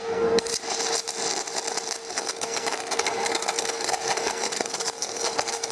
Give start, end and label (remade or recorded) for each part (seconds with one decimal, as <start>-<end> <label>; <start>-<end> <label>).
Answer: 0.0-0.5 remade; 0.5-2.1 recorded; 2.1-5.7 remade